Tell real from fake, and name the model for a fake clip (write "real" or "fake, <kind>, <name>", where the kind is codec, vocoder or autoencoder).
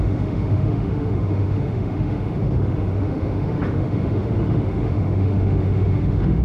fake, autoencoder, DAC-VAE